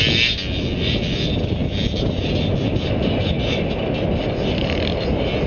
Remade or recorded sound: recorded